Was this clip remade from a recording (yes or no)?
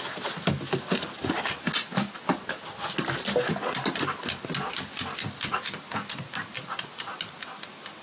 no